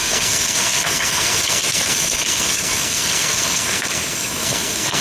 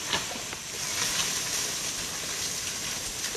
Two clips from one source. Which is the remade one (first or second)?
first